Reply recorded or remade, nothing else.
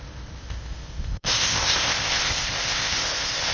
remade